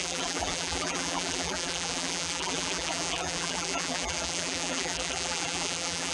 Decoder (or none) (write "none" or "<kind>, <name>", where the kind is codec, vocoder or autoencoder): vocoder, BigVGAN v2